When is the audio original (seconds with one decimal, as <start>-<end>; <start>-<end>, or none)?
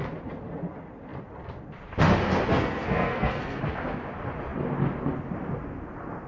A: 0.0-2.5; 3.6-6.3